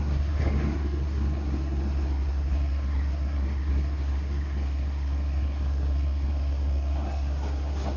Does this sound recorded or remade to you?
remade